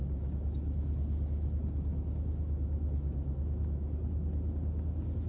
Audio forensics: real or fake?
real